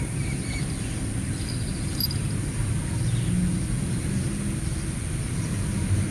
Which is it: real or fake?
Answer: real